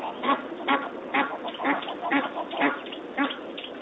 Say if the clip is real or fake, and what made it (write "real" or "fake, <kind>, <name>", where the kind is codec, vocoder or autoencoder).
real